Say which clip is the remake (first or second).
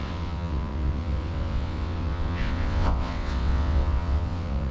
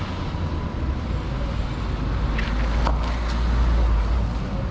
first